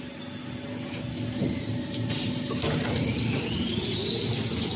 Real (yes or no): yes